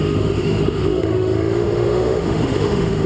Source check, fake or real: fake